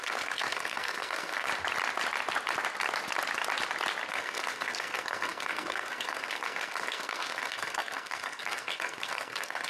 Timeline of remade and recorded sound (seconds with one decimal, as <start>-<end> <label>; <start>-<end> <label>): 0.0-1.5 remade; 1.5-4.1 recorded; 4.1-9.7 remade

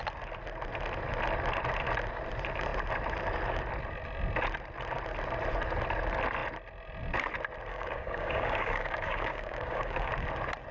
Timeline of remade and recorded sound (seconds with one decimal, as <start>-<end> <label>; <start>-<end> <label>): 0.0-7.7 recorded; 7.7-10.1 remade; 10.1-10.7 recorded

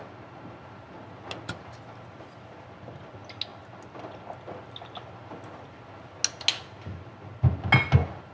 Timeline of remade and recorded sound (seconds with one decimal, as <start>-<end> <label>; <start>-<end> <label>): 0.0-8.3 recorded

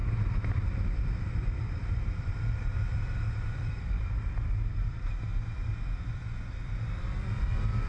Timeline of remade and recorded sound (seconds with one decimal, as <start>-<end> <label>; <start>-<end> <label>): 0.0-5.3 remade; 5.3-6.1 recorded; 6.1-7.9 remade

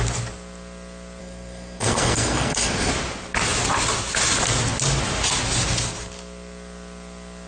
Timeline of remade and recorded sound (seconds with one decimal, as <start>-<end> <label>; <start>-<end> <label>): 0.0-1.2 recorded; 1.2-2.9 remade; 2.9-7.5 recorded

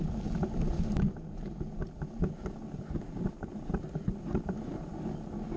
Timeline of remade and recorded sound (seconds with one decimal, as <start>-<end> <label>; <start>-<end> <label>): 0.0-0.7 recorded; 0.7-1.6 remade; 1.6-3.5 recorded; 3.5-4.9 remade; 4.9-5.6 recorded

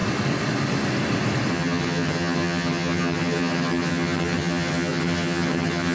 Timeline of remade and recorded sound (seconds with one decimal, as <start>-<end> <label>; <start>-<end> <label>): 0.0-1.5 recorded; 1.5-5.9 remade

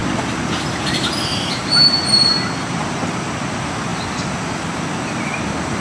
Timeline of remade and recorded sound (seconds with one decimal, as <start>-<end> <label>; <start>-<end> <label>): 0.0-5.8 recorded